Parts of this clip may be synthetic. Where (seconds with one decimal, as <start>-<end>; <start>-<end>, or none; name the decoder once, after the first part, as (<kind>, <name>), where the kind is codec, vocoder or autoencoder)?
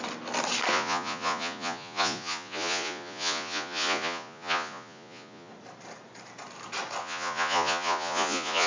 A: 0.7-5.5 (vocoder, Vocos); 7.0-8.7